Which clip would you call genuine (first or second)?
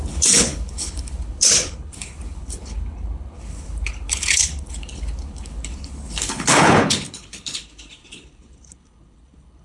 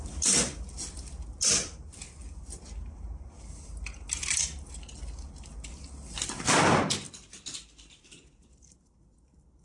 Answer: second